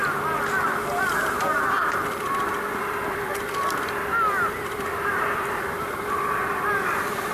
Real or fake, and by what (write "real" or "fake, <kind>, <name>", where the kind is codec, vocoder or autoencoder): real